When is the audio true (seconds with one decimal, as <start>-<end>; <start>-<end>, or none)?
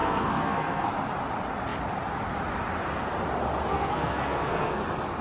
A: 0.9-3.7; 4.8-5.2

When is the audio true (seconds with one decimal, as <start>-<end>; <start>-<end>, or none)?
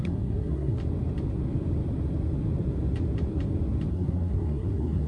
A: 0.8-3.9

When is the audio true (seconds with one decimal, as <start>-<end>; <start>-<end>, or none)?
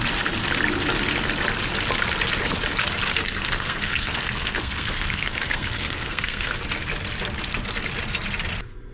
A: 0.0-3.2; 6.6-8.9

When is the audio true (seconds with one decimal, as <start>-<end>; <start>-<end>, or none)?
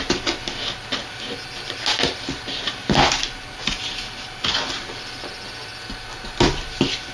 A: 0.0-7.1